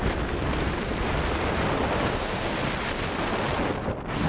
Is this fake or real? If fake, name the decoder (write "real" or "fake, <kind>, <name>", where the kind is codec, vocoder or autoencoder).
real